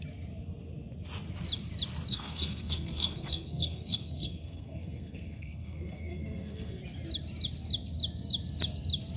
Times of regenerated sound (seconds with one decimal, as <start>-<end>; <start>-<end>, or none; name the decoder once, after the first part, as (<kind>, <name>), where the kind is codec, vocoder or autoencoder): 2.1-6.8 (codec, SNAC)